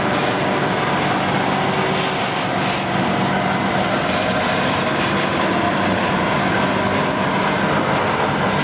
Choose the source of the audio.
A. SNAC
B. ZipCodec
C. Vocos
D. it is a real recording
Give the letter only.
D